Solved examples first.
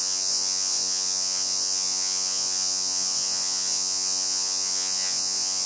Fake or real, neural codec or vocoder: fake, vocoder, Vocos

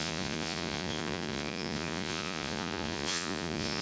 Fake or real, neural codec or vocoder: fake, vocoder, Vocos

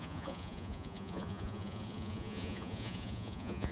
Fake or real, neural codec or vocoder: fake, vocoder, Vocos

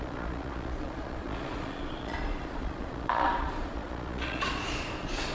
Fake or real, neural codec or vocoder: fake, vocoder, Vocos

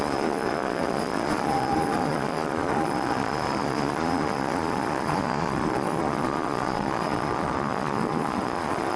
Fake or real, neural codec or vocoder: fake, vocoder, Vocos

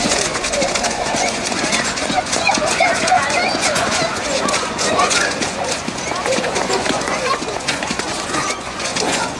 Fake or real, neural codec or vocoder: fake, vocoder, Vocos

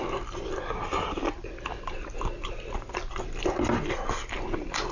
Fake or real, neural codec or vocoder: real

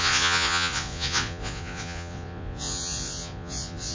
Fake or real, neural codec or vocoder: fake, vocoder, Vocos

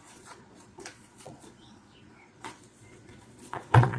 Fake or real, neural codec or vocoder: fake, vocoder, Vocos